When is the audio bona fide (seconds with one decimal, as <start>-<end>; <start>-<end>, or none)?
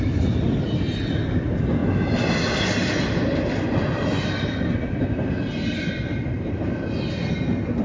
0.0-7.8